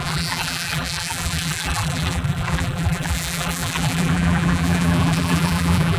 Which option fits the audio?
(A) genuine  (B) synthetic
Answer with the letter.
B